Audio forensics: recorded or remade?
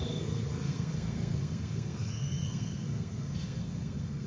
remade